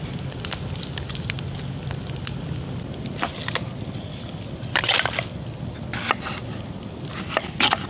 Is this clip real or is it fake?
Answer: real